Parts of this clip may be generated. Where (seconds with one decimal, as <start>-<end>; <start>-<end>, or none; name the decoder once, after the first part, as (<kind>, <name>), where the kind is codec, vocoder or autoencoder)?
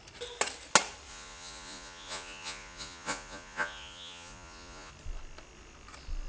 1.1-4.9 (vocoder, Vocos)